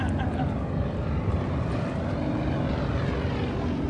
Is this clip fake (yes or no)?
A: no